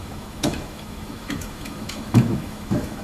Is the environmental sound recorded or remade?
remade